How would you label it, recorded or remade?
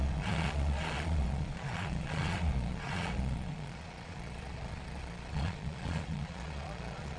remade